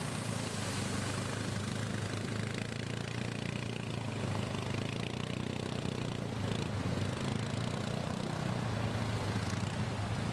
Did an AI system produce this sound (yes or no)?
no